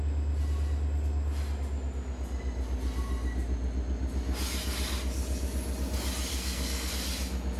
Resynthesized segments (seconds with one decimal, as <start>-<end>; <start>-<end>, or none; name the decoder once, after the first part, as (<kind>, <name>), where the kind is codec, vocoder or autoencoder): 6.3-6.9 (codec, SNAC)